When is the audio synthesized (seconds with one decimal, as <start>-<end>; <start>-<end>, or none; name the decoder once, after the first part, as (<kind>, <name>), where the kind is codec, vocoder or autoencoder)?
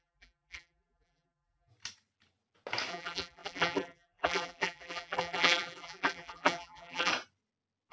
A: 0.0-1.7 (vocoder, BigVGAN v2); 2.9-7.1